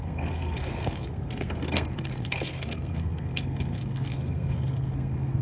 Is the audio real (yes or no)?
no